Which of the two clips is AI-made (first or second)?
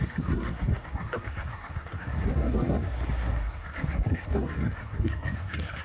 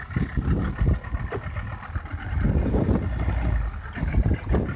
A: first